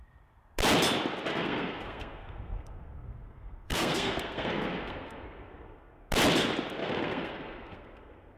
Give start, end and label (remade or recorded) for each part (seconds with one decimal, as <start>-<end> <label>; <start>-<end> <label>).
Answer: 0.0-1.3 recorded; 1.3-6.1 remade; 6.1-6.8 recorded; 6.8-8.4 remade